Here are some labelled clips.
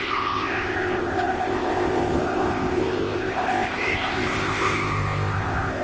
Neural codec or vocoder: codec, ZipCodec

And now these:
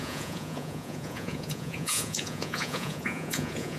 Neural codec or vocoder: vocoder, Vocos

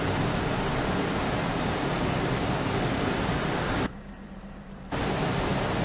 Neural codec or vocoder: vocoder, BigVGAN v2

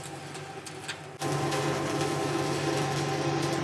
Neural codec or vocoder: none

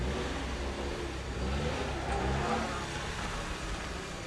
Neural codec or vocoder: none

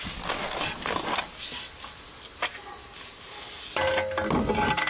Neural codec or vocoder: none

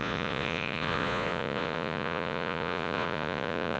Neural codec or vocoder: vocoder, Vocos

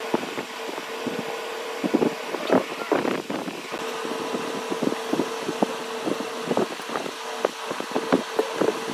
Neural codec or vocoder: none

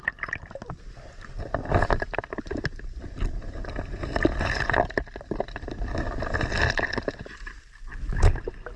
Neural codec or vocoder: none